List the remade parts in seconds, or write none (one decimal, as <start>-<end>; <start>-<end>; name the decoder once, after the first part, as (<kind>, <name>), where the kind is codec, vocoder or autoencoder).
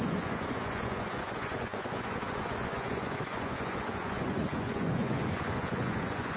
0.0-6.4 (vocoder, Vocos)